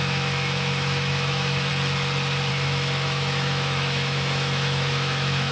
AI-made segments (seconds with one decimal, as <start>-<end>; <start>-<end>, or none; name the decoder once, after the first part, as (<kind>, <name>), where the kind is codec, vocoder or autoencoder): 0.0-1.7 (autoencoder, DAC-VAE); 2.5-5.5